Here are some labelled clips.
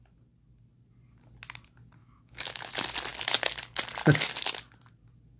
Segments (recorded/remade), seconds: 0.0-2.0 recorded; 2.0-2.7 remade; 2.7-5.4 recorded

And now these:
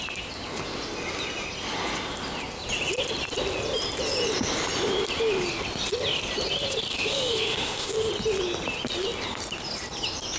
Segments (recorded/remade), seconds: 0.0-6.9 recorded; 6.9-8.1 remade; 8.1-10.4 recorded

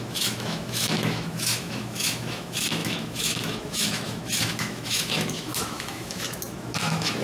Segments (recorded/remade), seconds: 0.0-7.2 remade

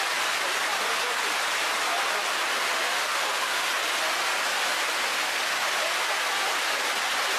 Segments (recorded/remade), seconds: 0.0-2.5 recorded; 2.5-3.7 remade; 3.7-5.1 recorded; 5.1-5.7 remade; 5.7-7.4 recorded

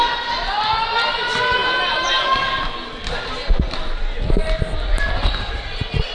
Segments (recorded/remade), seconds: 0.0-6.1 recorded

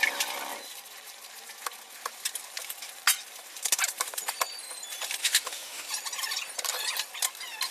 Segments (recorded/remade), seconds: 0.0-5.2 recorded; 5.2-5.9 remade; 5.9-7.7 recorded